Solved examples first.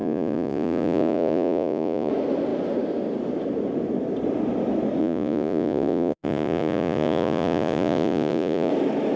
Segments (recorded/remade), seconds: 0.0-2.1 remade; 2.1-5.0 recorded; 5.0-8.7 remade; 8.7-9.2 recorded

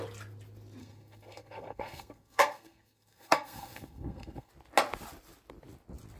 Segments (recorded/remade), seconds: 0.0-0.8 recorded; 0.8-4.5 remade; 4.5-6.2 recorded

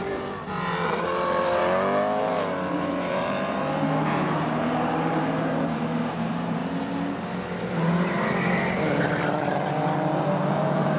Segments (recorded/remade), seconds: 0.0-1.6 remade; 1.6-2.2 recorded; 2.2-6.6 remade; 6.6-10.5 recorded; 10.5-11.0 remade

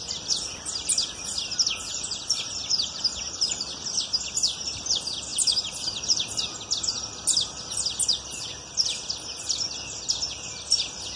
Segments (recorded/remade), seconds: 0.0-11.2 recorded

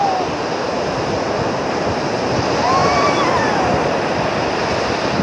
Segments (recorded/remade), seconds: 0.0-2.8 recorded; 2.8-3.4 remade; 3.4-5.2 recorded